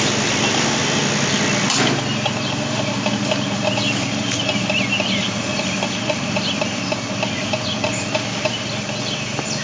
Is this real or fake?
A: real